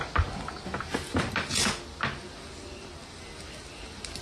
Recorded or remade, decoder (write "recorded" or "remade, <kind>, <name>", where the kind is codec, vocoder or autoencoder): recorded